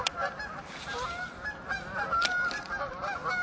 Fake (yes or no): no